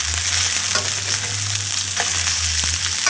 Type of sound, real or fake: real